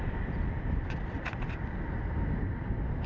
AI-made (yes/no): no